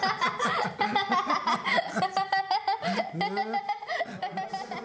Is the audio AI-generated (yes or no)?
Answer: no